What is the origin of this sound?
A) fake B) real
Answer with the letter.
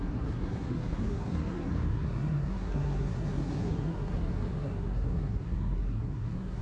A